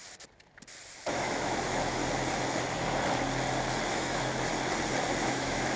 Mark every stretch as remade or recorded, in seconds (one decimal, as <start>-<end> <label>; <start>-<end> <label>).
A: 0.0-1.1 recorded; 1.1-2.0 remade; 2.0-3.9 recorded; 3.9-4.5 remade; 4.5-5.2 recorded; 5.2-5.8 remade